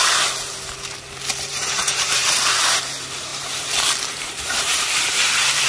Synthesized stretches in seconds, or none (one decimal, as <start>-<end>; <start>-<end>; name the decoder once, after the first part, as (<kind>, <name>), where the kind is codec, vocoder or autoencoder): 1.5-2.2 (vocoder, BigVGAN v2); 2.9-5.7